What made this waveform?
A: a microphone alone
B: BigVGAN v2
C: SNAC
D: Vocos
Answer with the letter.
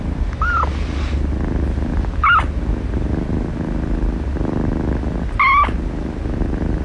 A